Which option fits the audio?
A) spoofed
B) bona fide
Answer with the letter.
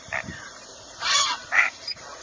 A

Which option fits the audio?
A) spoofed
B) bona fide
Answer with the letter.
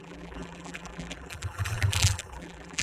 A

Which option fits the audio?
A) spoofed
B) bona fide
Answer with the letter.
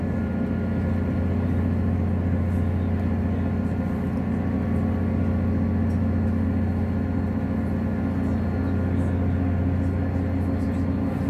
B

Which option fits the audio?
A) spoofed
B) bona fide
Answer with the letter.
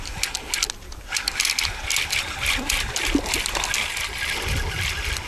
B